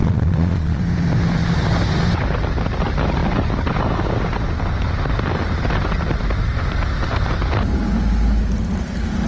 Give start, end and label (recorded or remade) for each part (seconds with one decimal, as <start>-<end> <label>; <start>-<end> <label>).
0.0-0.8 remade; 0.8-9.3 recorded